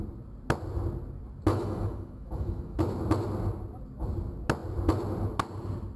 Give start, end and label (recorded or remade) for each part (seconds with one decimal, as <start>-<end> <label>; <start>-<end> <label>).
0.0-1.5 recorded; 1.5-2.8 remade; 2.8-6.0 recorded